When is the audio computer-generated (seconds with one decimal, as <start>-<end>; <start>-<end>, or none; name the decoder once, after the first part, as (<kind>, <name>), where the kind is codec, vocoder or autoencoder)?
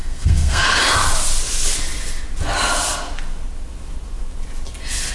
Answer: 0.0-0.8 (codec, SNAC)